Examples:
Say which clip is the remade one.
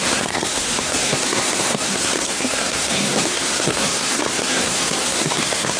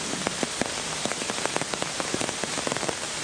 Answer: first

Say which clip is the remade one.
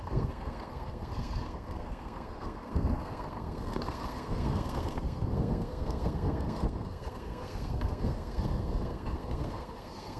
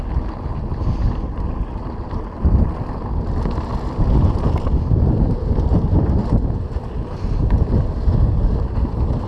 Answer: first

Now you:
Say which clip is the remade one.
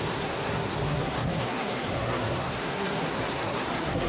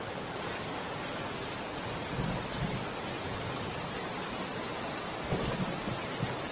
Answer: first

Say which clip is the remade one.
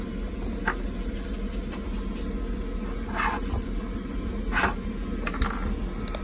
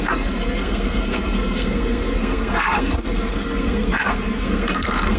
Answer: second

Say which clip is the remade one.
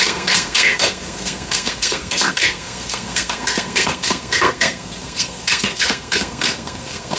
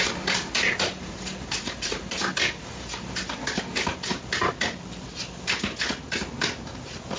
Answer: first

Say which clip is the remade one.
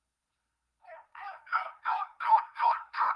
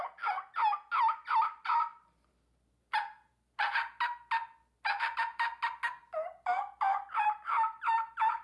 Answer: first